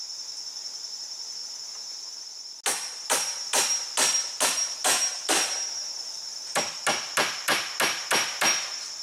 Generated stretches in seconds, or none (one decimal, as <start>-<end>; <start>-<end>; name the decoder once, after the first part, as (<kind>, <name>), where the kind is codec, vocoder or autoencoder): none